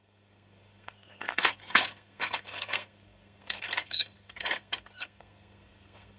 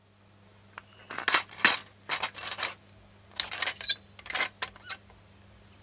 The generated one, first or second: first